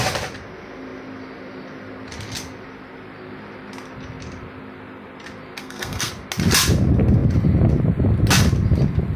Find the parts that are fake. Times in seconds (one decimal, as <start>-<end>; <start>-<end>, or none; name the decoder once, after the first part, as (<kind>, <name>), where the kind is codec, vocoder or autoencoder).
5.6-6.1 (codec, SNAC)